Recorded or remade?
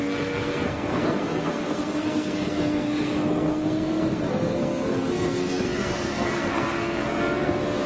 remade